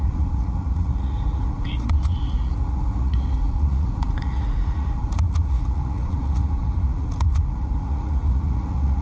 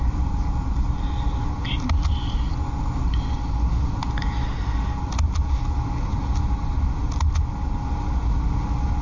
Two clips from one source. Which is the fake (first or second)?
first